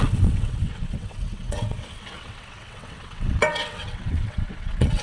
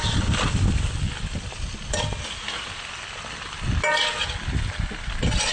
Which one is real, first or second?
second